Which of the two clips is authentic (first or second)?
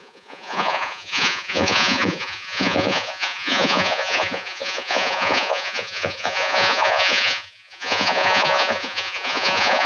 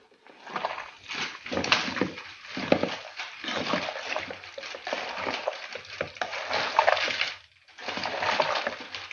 second